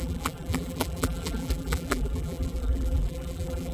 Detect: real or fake fake